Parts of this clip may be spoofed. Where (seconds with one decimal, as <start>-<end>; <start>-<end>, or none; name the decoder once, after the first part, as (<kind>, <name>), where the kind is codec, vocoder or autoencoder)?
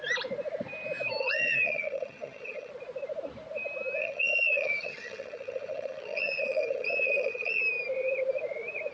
1.2-2.7 (vocoder, HiFi-GAN); 4.0-7.6